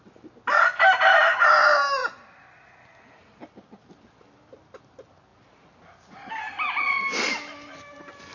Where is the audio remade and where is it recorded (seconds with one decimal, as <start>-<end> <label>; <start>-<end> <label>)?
0.0-8.3 recorded